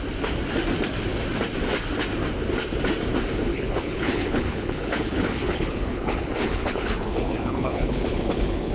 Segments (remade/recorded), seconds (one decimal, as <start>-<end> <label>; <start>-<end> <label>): 0.0-3.5 recorded; 3.5-8.7 remade